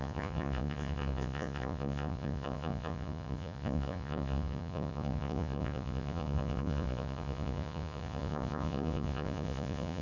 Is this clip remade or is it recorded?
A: remade